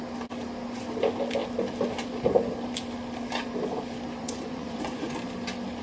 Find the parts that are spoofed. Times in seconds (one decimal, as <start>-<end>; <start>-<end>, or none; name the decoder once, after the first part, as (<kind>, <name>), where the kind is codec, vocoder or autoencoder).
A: 4.2-5.1 (vocoder, Vocos)